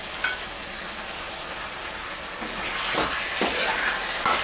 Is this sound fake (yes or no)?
no